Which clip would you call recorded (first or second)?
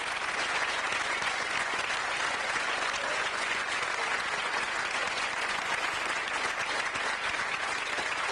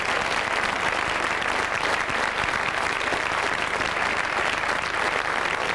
second